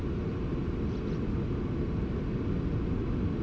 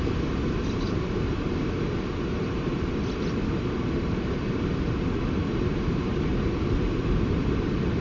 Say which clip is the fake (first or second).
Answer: second